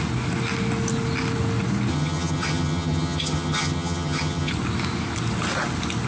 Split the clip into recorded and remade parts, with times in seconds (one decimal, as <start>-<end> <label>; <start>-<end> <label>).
0.0-1.9 recorded; 1.9-4.5 remade; 4.5-6.1 recorded